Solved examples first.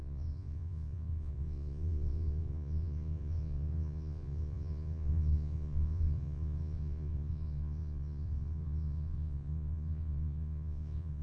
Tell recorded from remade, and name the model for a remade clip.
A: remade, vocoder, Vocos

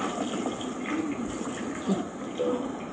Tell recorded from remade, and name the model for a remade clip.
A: recorded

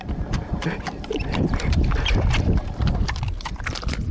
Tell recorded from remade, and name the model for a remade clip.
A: recorded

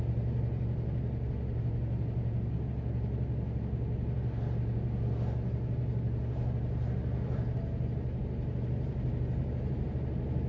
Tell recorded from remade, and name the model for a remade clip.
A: recorded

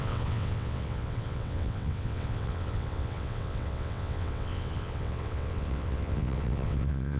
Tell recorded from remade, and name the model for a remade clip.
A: remade, vocoder, WaveNeXt